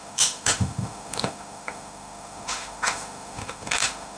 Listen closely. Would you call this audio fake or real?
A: fake